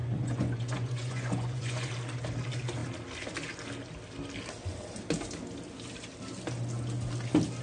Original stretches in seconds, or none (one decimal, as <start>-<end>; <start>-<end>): 1.9-7.6